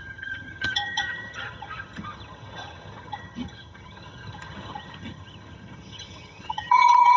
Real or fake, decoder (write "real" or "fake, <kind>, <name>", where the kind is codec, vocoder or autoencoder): fake, vocoder, HiFi-GAN